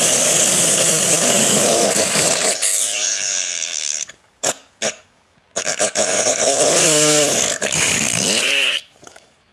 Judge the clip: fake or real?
fake